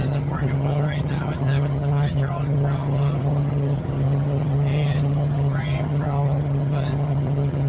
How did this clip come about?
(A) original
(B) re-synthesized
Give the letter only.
B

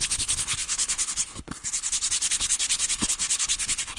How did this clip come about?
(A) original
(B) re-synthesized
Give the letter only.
B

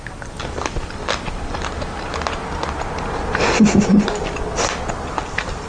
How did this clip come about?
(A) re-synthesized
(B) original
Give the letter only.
B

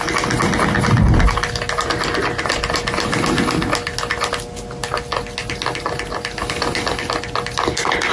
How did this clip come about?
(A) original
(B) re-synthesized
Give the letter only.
A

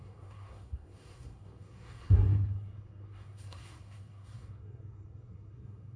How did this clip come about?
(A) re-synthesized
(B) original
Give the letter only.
A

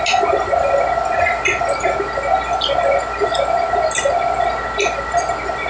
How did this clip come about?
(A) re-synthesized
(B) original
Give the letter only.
B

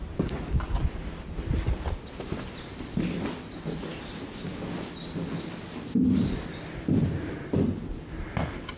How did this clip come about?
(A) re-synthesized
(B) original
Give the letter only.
B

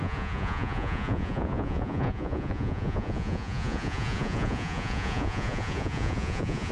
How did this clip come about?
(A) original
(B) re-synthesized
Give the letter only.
B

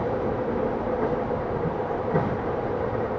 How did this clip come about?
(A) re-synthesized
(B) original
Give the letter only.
A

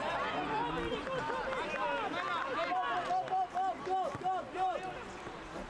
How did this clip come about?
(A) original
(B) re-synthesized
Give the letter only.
A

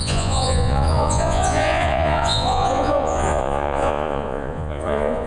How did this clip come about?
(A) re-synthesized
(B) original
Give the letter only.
A